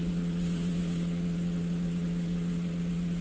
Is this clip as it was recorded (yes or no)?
no